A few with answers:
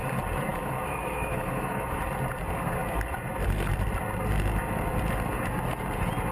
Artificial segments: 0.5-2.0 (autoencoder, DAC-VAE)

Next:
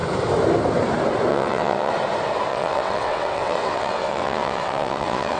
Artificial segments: 1.3-1.9 (vocoder, WaveNeXt); 2.5-5.4

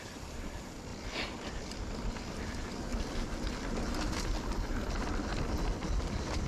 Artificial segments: 0.0-0.9 (vocoder, BigVGAN v2); 2.1-2.9; 6.0-6.5

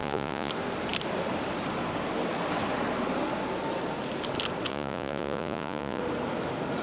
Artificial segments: 0.0-0.5 (vocoder, Vocos); 4.7-6.0

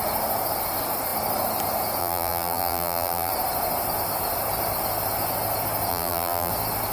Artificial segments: 2.0-3.3 (vocoder, BigVGAN v2); 5.9-6.5

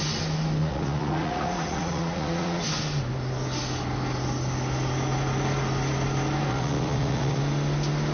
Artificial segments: 0.6-2.6 (vocoder, Vocos); 6.5-7.4